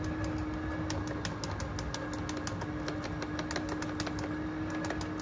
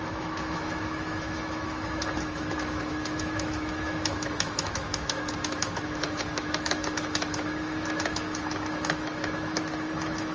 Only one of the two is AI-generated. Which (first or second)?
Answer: second